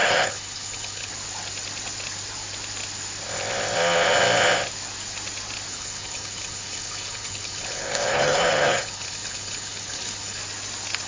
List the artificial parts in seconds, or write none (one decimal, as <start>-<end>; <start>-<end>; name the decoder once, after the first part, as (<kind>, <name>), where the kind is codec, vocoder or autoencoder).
0.0-1.1 (codec, HILCodec); 5.7-10.4